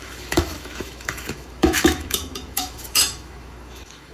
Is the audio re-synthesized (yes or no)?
yes